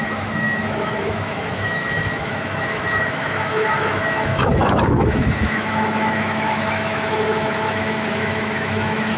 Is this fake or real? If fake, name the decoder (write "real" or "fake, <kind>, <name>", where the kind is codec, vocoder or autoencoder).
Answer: fake, autoencoder, DAC-VAE